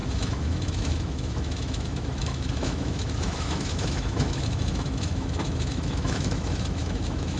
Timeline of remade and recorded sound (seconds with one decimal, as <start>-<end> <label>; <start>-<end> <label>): 0.0-7.4 remade

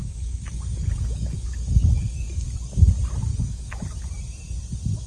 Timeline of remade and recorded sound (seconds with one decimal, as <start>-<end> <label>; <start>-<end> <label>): 0.0-2.9 remade; 2.9-3.3 recorded; 3.3-3.8 remade; 3.8-5.1 recorded

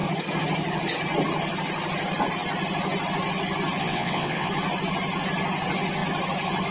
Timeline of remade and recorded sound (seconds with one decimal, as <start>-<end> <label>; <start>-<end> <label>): 0.0-3.8 recorded; 3.8-4.5 remade; 4.5-6.7 recorded

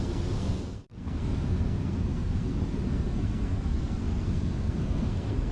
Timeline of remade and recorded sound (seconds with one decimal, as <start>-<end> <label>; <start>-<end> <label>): 0.0-5.5 remade

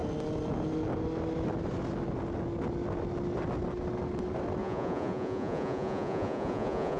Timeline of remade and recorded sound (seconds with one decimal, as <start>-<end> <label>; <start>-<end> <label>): 0.0-4.6 recorded; 4.6-7.0 remade

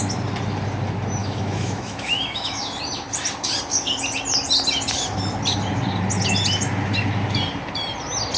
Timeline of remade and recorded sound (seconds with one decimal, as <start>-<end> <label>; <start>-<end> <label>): 0.0-1.2 recorded; 1.2-2.8 remade; 2.8-8.4 recorded

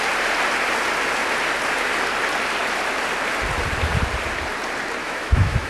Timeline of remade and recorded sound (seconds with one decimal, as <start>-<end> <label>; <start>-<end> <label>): 0.0-5.0 recorded; 5.0-5.7 remade